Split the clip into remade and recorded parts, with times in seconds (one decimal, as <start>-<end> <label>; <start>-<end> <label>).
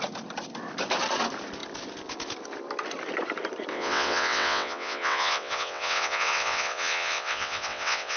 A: 0.0-3.7 recorded; 3.7-8.2 remade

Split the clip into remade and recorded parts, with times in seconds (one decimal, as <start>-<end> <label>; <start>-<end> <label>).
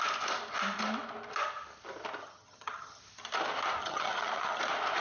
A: 0.0-2.2 recorded; 2.2-3.0 remade; 3.0-3.8 recorded; 3.8-4.6 remade; 4.6-5.0 recorded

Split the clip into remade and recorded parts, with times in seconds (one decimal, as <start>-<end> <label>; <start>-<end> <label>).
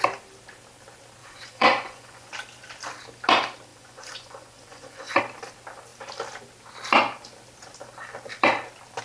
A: 0.0-1.2 recorded; 1.2-2.3 remade; 2.3-3.7 recorded; 3.7-5.2 remade; 5.2-9.0 recorded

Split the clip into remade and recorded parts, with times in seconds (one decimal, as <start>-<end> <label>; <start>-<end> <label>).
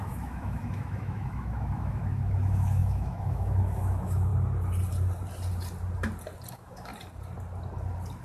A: 0.0-4.3 remade; 4.3-6.5 recorded; 6.5-6.9 remade; 6.9-8.2 recorded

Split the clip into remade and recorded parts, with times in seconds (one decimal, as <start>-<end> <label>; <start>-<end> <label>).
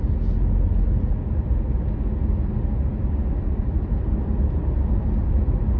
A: 0.0-2.9 recorded; 2.9-4.6 remade; 4.6-5.8 recorded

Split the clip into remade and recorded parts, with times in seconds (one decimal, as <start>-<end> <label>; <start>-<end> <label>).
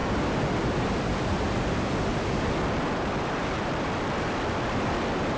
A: 0.0-1.0 remade; 1.0-2.1 recorded; 2.1-5.4 remade